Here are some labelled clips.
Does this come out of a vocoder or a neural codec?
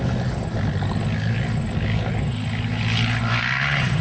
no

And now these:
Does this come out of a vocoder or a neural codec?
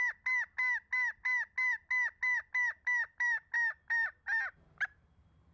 no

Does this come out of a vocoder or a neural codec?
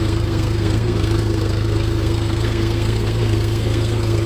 yes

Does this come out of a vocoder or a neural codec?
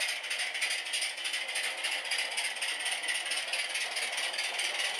no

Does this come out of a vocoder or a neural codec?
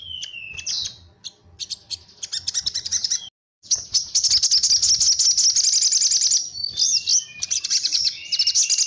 no